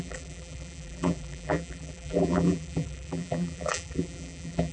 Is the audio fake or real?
fake